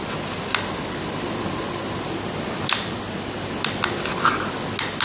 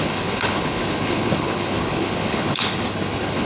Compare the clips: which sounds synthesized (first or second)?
second